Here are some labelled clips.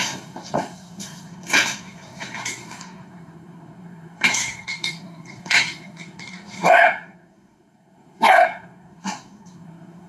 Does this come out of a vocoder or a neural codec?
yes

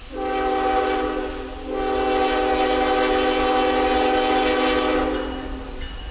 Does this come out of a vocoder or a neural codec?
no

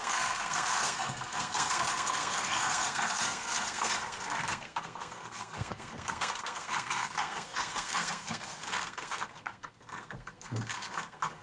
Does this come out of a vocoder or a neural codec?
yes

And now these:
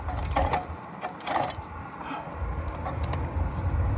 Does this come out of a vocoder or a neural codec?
no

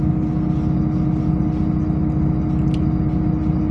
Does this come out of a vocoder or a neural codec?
no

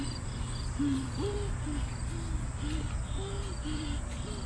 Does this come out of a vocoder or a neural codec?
no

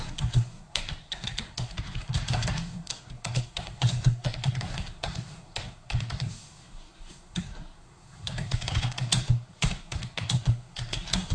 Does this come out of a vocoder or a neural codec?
yes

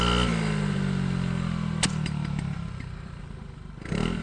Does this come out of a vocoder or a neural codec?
no